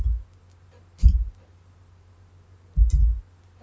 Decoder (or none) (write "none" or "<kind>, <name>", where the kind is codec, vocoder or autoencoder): none